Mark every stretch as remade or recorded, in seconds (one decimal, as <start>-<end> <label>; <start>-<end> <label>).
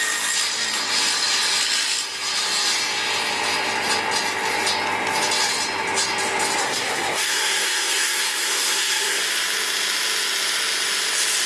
0.0-6.6 recorded; 6.6-9.2 remade; 9.2-11.5 recorded